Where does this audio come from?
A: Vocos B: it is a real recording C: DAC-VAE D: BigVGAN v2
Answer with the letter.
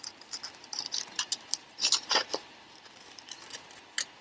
D